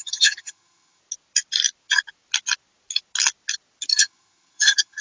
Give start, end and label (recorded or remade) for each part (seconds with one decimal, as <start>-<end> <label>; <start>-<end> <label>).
0.0-1.0 remade; 1.0-4.0 recorded; 4.0-5.0 remade

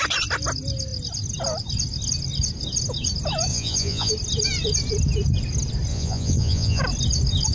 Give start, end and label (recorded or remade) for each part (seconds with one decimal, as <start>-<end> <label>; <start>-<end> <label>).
0.0-3.5 recorded; 3.5-4.1 remade; 4.1-5.9 recorded; 5.9-6.8 remade; 6.8-7.5 recorded

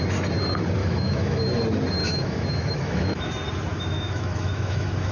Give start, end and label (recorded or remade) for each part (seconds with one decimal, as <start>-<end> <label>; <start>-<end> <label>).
0.0-0.8 recorded; 0.8-1.4 remade; 1.4-2.0 recorded; 2.0-3.3 remade; 3.3-3.7 recorded; 3.7-5.1 remade

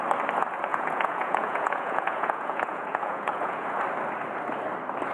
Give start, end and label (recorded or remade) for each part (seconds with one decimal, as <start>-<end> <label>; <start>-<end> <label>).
0.0-0.7 recorded; 0.7-3.8 remade; 3.8-5.1 recorded

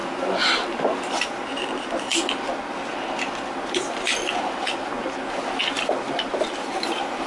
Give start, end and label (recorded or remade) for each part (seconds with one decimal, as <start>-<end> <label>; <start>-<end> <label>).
0.0-1.2 recorded; 1.2-2.1 remade; 2.1-6.5 recorded; 6.5-7.3 remade

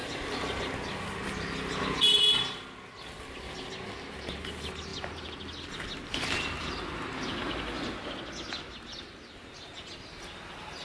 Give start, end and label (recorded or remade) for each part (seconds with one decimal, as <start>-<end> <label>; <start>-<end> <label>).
0.0-10.8 recorded